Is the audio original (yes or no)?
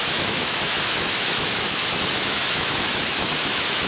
no